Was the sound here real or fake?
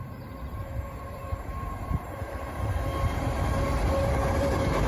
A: fake